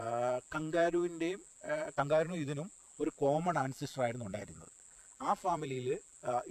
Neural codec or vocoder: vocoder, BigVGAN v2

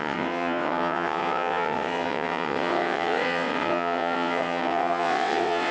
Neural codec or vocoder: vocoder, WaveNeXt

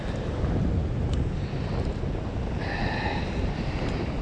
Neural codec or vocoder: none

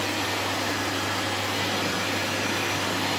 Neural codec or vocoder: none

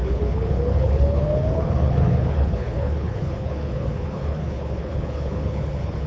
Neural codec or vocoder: codec, HILCodec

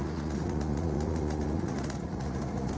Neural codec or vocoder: vocoder, Vocos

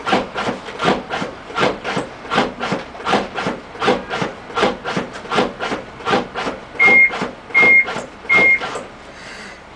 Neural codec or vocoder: none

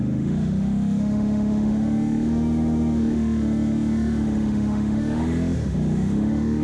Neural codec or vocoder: autoencoder, DAC-VAE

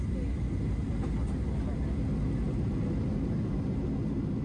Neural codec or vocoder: none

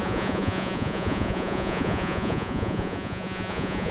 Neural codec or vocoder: vocoder, Vocos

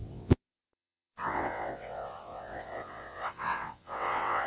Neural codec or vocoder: vocoder, WaveNeXt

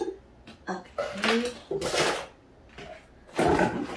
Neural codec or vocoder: none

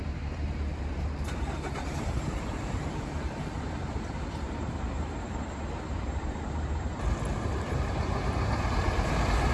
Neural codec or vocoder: vocoder, BigVGAN v2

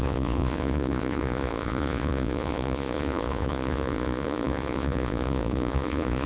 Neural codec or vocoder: vocoder, Vocos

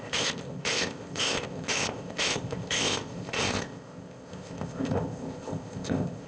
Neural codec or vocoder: codec, ZipCodec